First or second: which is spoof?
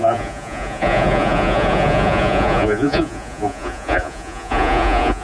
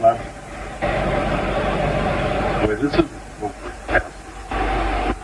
first